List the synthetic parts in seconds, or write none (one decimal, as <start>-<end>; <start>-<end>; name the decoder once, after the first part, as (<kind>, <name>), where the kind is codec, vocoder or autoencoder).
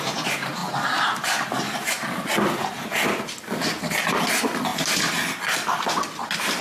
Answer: none